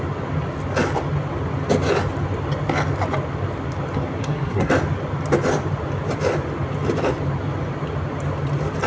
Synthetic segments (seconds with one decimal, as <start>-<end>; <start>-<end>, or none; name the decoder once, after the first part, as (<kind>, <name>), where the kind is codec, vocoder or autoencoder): 4.2-4.7 (codec, SNAC)